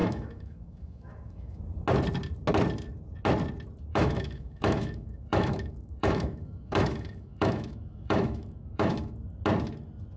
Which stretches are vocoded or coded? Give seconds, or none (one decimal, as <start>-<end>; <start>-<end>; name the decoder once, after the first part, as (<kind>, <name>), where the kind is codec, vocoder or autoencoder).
0.0-1.6 (autoencoder, DAC-VAE); 3.9-9.1